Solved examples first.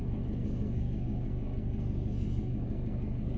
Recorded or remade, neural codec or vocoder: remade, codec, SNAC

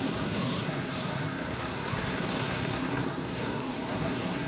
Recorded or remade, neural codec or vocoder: remade, codec, SNAC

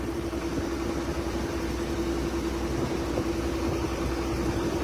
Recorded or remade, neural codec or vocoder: recorded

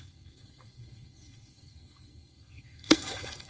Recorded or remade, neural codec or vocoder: remade, codec, SNAC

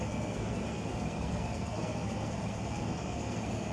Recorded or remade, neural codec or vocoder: remade, codec, SNAC